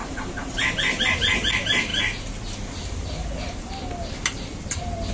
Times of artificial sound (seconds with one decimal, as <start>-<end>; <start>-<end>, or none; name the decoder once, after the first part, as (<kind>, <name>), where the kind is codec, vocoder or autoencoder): 0.0-0.6 (vocoder, BigVGAN v2)